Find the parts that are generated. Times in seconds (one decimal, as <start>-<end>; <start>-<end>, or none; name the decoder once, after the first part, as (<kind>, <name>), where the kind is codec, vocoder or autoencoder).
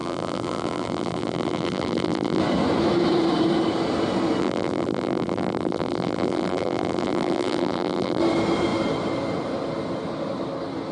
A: 0.0-2.4 (vocoder, BigVGAN v2); 4.4-8.2